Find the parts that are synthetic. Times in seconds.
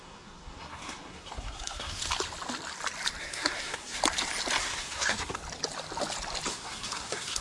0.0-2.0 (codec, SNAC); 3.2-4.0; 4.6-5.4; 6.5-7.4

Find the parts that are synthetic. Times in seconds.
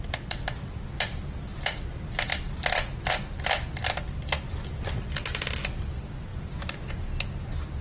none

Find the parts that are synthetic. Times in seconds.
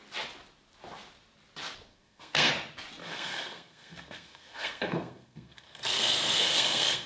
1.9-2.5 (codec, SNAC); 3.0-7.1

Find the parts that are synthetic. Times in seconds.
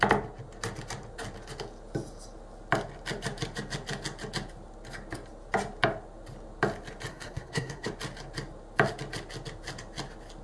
7.1-7.9 (codec, SNAC)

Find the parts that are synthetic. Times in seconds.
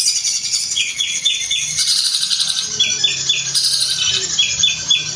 0.0-1.9 (vocoder, WaveNeXt)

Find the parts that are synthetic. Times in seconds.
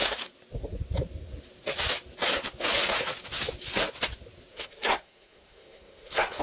4.5-6.4 (codec, SNAC)